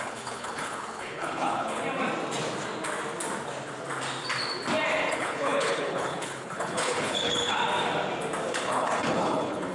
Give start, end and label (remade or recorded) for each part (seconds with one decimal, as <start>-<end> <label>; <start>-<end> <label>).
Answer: 0.0-1.8 remade; 1.8-5.1 recorded; 5.1-7.6 remade; 7.6-8.5 recorded; 8.5-9.7 remade